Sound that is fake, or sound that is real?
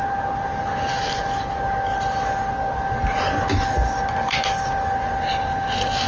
real